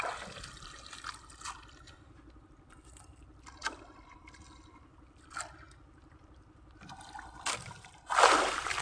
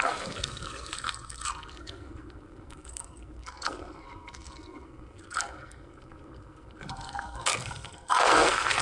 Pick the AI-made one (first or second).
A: second